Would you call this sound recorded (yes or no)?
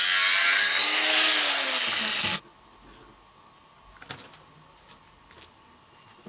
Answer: yes